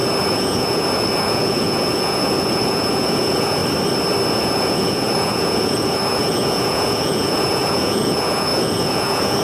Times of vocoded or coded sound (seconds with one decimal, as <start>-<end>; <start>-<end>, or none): 0.0-3.6; 4.3-9.4